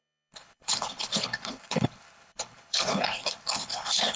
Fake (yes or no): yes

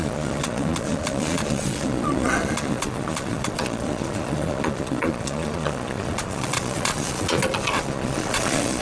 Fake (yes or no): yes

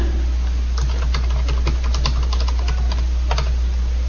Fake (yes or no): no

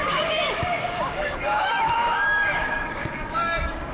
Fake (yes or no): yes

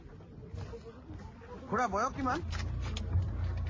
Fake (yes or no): no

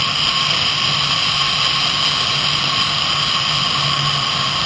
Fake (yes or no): no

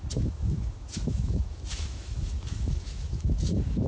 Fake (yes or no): yes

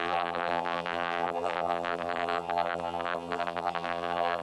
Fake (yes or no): yes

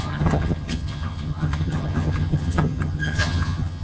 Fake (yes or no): yes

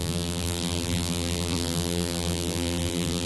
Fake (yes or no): yes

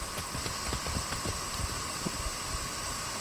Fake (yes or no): no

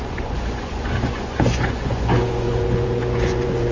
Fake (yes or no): yes